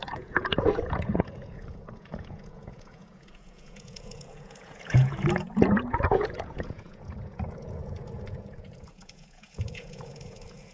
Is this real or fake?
fake